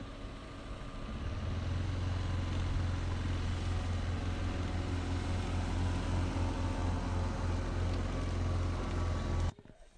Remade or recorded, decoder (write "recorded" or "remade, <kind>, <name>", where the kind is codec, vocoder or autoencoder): recorded